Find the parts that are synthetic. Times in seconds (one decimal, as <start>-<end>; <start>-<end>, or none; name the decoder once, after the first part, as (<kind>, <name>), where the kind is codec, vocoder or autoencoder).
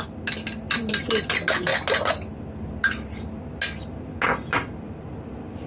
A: none